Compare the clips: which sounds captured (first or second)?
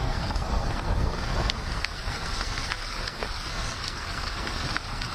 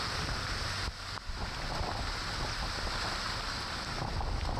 second